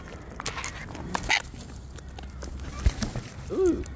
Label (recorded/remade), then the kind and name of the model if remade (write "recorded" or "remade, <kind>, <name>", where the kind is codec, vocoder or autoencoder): recorded